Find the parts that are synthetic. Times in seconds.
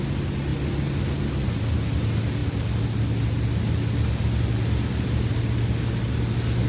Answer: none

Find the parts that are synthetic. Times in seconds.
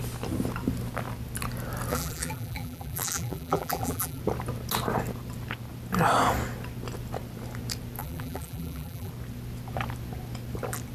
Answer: 1.9-4.2; 8.0-9.1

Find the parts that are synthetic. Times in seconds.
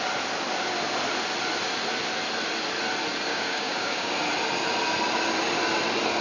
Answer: 3.3-4.1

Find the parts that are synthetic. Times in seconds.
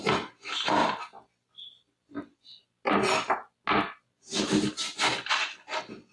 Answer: none